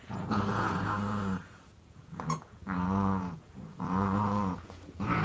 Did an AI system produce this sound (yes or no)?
yes